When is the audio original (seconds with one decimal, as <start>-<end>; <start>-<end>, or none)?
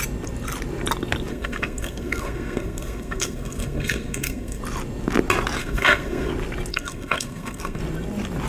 0.0-1.3; 4.6-5.6; 6.3-6.7; 7.8-8.5